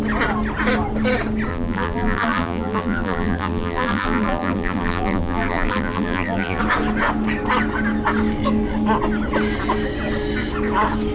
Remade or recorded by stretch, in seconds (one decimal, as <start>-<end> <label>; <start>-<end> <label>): 0.0-1.5 recorded; 1.5-6.6 remade; 6.6-11.1 recorded